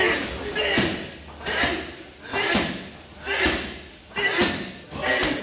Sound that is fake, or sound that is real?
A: real